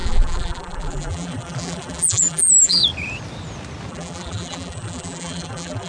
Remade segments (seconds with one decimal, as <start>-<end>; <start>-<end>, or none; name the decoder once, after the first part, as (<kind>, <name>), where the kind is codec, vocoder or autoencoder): 0.0-2.8 (vocoder, BigVGAN v2); 3.9-5.9